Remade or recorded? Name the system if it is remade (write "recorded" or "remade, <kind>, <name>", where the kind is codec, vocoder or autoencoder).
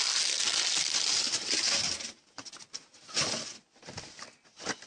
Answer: recorded